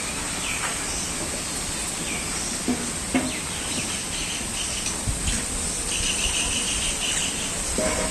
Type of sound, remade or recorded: recorded